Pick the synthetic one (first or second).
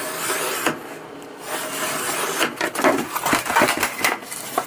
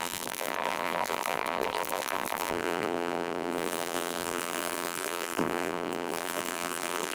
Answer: second